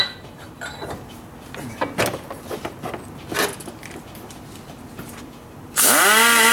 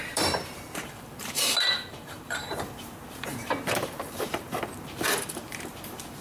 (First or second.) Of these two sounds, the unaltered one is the first